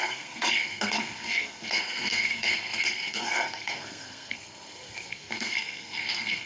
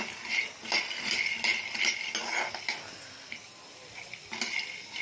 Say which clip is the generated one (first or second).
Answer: first